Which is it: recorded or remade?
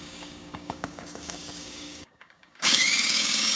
remade